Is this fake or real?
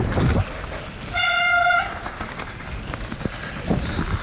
real